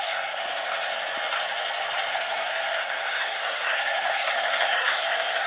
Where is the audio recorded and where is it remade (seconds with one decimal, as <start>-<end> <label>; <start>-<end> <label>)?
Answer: 0.0-0.4 remade; 0.4-2.1 recorded; 2.1-5.5 remade